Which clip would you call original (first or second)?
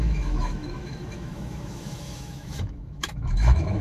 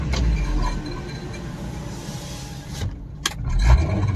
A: second